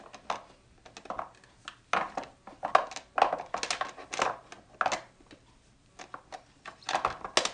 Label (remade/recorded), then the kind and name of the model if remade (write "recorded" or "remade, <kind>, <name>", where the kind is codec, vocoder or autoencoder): recorded